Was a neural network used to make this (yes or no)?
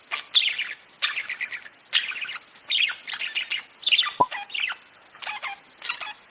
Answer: no